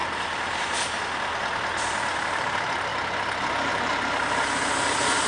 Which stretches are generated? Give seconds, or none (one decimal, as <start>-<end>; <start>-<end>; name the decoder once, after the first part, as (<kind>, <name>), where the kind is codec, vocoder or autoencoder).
2.2-2.9 (vocoder, BigVGAN v2); 3.7-5.3